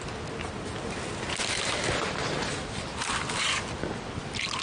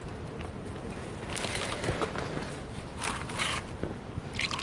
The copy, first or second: second